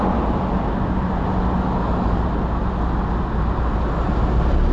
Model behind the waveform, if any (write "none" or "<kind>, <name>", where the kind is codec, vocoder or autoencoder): none